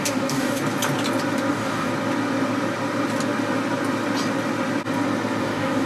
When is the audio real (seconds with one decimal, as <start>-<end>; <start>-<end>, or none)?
0.6-1.5; 1.9-5.4